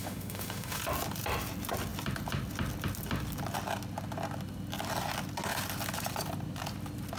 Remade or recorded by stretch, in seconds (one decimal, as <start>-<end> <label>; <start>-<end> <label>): 0.0-0.8 remade; 0.8-7.2 recorded